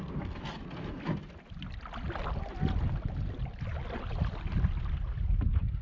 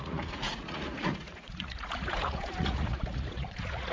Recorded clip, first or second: first